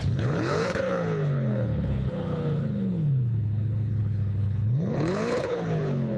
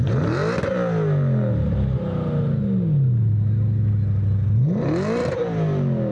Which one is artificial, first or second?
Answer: first